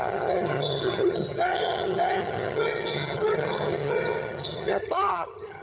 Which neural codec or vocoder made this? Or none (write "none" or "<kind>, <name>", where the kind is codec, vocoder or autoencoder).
vocoder, HiFi-GAN